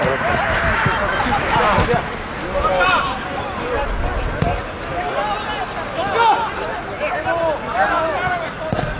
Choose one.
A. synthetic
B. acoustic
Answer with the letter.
B